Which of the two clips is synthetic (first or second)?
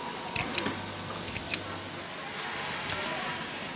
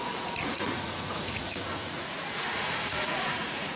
second